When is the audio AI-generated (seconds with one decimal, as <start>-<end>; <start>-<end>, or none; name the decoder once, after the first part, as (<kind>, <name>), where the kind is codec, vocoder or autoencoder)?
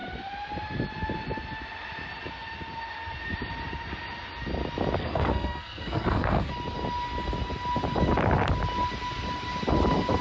5.0-6.5 (codec, SNAC)